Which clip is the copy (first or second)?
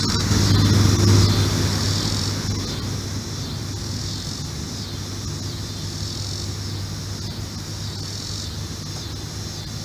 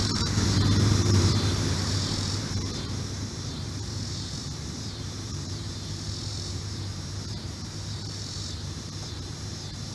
second